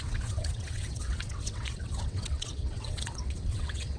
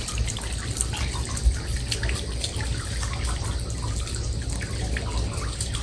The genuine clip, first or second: second